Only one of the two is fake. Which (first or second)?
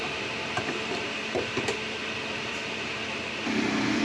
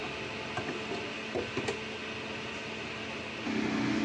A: first